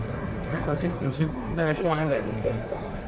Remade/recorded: remade